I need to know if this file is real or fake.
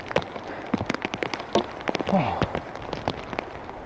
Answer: fake